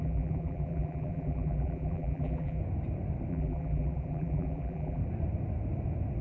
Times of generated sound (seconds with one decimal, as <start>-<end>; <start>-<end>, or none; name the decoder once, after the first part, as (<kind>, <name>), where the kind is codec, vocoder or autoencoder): 0.0-2.6 (vocoder, BigVGAN v2); 3.3-5.0